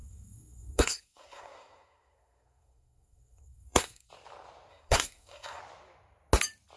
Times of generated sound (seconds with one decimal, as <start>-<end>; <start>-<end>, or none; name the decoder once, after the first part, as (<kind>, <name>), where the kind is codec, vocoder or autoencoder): 0.0-4.1 (codec, SNAC); 4.7-5.6